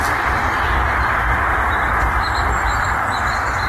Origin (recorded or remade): remade